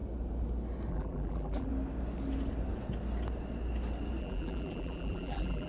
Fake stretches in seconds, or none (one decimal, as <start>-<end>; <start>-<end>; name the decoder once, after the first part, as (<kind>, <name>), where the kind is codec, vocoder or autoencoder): 0.9-1.7 (vocoder, BigVGAN v2); 4.2-5.7